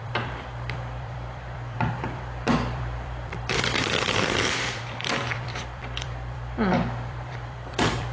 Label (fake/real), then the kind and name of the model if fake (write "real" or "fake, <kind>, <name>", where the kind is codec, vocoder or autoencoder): fake, vocoder, BigVGAN v2